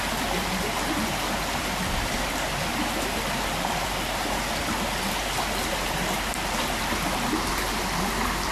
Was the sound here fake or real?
real